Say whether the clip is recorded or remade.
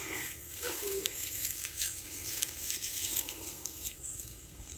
remade